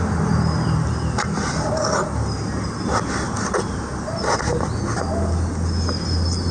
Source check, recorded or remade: recorded